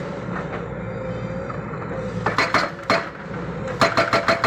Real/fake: real